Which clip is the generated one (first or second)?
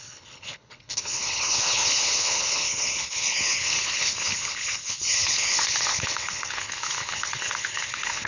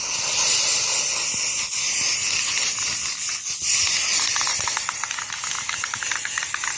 first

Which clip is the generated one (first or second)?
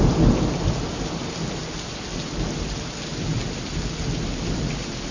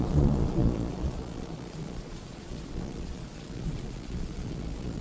second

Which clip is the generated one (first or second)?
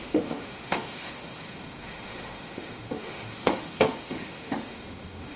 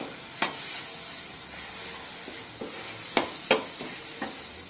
first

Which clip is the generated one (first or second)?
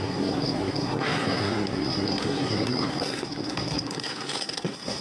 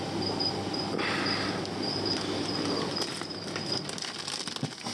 first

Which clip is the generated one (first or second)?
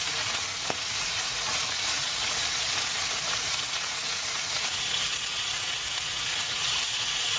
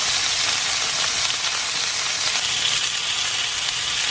first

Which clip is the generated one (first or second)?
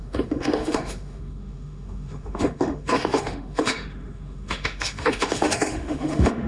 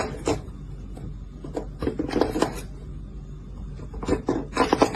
first